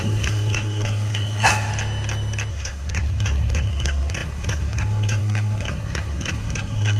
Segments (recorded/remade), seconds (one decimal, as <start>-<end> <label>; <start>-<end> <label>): 0.0-1.7 remade; 1.7-2.5 recorded; 2.5-7.0 remade